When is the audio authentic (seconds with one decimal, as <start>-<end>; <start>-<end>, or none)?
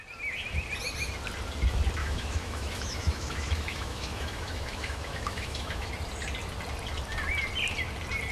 0.0-2.0; 5.9-8.3